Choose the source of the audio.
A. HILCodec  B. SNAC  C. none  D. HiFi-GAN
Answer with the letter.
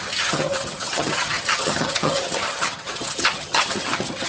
D